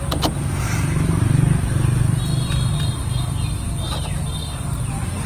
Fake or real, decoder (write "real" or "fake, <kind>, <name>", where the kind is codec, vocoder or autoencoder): real